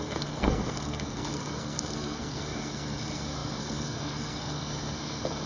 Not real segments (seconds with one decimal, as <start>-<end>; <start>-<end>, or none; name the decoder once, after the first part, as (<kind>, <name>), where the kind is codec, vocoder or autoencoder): 0.0-5.5 (codec, SNAC)